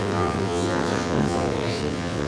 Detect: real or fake fake